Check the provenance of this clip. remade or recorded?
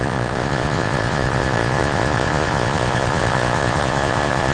remade